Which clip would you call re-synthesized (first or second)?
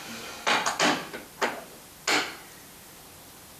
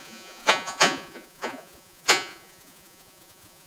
second